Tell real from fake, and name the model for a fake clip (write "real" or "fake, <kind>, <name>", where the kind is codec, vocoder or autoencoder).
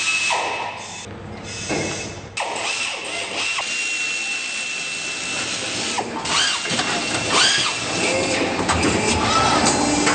real